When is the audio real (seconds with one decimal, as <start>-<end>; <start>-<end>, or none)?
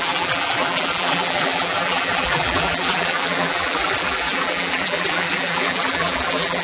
none